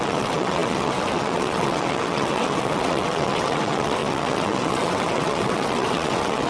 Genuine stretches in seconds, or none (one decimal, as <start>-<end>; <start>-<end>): none